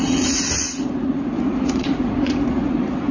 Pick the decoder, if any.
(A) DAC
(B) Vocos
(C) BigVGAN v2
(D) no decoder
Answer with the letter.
B